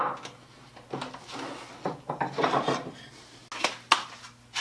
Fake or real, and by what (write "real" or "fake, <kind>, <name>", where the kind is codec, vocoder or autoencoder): real